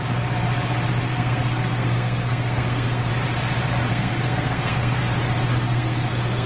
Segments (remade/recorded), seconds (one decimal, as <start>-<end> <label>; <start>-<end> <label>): 0.0-1.1 recorded; 1.1-3.1 remade; 3.1-3.9 recorded; 3.9-5.0 remade; 5.0-5.7 recorded; 5.7-6.5 remade